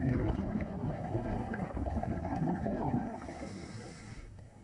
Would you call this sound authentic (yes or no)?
no